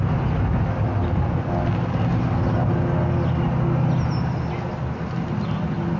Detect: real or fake real